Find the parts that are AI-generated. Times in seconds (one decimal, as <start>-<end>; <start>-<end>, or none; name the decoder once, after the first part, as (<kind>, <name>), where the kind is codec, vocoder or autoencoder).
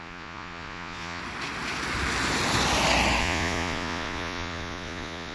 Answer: 0.0-1.2 (vocoder, Vocos); 3.2-5.3